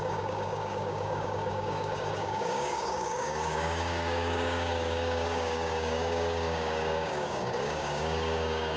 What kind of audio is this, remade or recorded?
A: remade